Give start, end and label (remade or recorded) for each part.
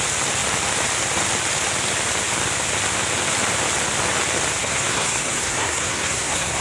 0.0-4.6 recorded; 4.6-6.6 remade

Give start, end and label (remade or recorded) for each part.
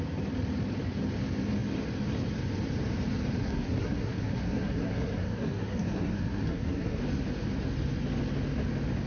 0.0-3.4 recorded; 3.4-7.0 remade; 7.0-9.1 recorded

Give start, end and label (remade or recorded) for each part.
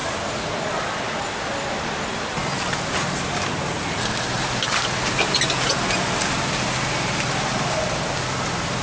0.0-8.8 recorded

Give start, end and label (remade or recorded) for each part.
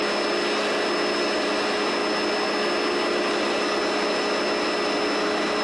0.0-5.6 recorded